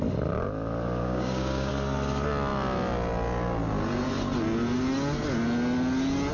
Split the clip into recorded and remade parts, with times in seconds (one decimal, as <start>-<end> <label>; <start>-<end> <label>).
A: 0.0-1.0 recorded; 1.0-1.7 remade; 1.7-6.3 recorded